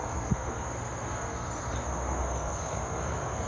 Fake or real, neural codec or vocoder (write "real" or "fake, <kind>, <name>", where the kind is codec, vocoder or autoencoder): fake, codec, SNAC